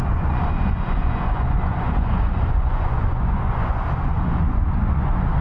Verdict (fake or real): fake